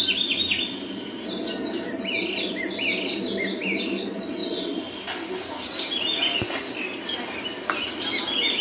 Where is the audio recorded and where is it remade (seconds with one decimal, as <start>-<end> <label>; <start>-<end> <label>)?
0.0-8.6 recorded